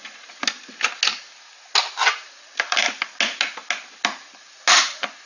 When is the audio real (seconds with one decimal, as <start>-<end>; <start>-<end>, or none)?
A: 0.0-5.3